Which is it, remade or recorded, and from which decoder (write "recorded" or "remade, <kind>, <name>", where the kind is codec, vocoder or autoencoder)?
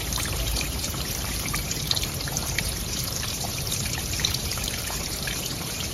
remade, vocoder, BigVGAN v2